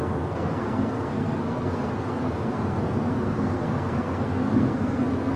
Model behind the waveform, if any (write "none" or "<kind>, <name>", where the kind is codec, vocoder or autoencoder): codec, SNAC